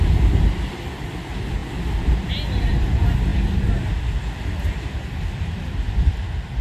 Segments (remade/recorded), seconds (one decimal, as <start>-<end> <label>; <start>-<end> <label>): 0.0-6.6 recorded